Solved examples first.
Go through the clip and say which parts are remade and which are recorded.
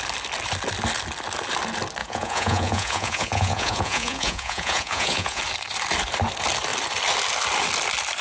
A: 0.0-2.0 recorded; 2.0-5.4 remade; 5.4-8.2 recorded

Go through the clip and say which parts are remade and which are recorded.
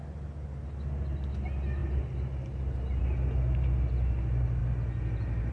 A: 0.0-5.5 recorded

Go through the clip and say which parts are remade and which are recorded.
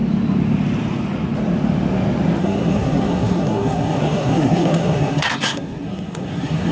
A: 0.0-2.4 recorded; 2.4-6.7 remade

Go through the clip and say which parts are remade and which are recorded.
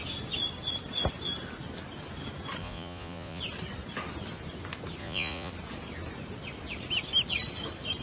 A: 0.0-2.6 recorded; 2.6-3.4 remade; 3.4-5.0 recorded; 5.0-5.5 remade; 5.5-8.0 recorded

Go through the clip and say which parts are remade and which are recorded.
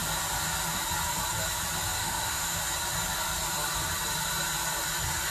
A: 0.0-2.0 recorded; 2.0-2.6 remade; 2.6-5.3 recorded